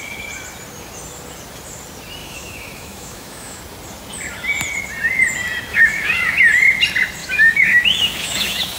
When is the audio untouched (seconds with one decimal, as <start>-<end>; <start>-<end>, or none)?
0.0-2.2; 3.6-5.7; 6.4-7.2